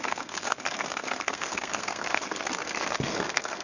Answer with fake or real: fake